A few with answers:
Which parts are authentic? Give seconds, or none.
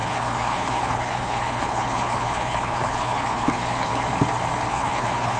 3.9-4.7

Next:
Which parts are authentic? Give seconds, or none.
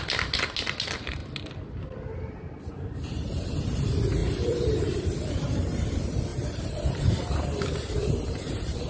0.0-4.2; 5.8-6.3; 7.2-8.9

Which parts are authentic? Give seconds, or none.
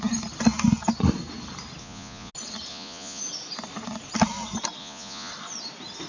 0.0-1.8; 2.3-2.7; 3.2-4.8; 5.3-6.1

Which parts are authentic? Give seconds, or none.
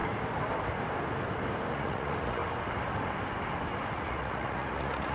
0.0-1.7; 2.4-3.9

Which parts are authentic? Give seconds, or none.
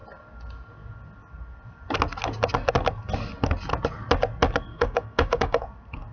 0.0-4.7; 5.6-6.1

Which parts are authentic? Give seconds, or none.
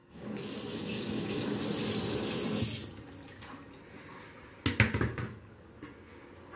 1.6-5.1; 5.7-6.6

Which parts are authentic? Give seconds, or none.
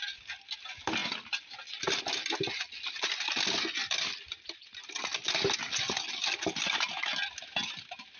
0.0-8.2